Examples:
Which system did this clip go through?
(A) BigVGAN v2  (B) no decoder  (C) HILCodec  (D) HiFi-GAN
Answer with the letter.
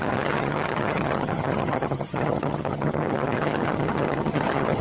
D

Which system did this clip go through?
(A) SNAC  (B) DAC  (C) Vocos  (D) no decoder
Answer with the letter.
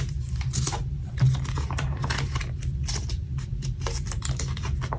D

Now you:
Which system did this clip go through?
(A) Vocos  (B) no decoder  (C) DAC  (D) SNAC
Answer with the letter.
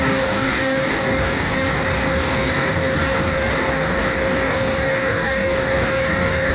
C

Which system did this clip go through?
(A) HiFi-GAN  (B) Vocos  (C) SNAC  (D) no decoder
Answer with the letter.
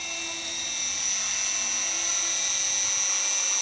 D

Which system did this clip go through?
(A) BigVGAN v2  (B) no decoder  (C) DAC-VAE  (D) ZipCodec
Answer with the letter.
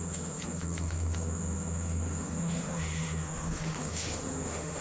C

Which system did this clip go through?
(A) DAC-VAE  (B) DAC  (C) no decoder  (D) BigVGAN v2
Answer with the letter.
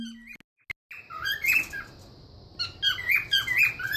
C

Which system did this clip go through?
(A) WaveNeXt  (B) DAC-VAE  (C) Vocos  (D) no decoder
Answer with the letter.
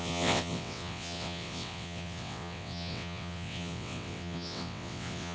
A